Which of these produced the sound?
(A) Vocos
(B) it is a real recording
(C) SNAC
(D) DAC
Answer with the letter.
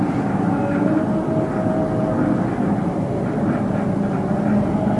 B